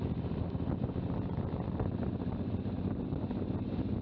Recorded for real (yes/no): yes